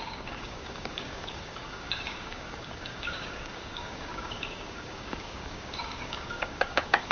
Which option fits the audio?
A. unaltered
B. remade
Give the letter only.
B